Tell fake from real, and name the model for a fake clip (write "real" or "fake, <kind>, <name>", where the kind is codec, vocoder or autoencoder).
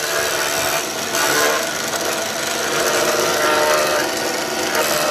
real